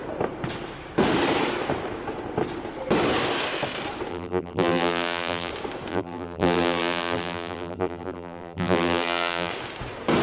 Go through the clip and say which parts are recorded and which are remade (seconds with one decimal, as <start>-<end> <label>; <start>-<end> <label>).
0.0-4.1 recorded; 4.1-5.5 remade; 5.5-5.9 recorded; 5.9-9.5 remade; 9.5-10.2 recorded

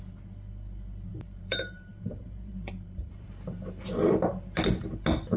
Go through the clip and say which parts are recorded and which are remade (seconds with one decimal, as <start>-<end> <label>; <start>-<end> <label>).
0.0-1.1 recorded; 1.1-4.3 remade; 4.3-5.4 recorded

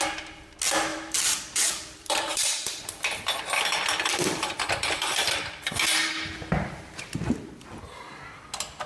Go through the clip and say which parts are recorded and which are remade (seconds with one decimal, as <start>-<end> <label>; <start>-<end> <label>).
0.0-0.9 recorded; 0.9-6.1 remade; 6.1-8.9 recorded

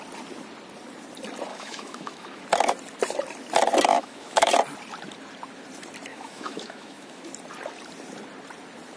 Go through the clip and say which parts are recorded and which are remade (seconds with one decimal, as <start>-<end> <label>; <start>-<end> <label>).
0.0-1.5 recorded; 1.5-2.4 remade; 2.4-3.9 recorded; 3.9-4.5 remade; 4.5-6.1 recorded; 6.1-7.3 remade; 7.3-9.0 recorded

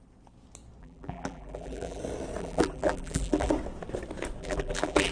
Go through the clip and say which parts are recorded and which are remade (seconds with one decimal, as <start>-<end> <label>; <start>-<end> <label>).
0.0-0.8 recorded; 0.8-2.0 remade; 2.0-2.4 recorded; 2.4-3.5 remade; 3.5-4.4 recorded; 4.4-5.1 remade